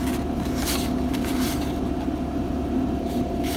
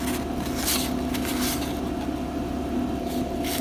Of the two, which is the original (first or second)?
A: second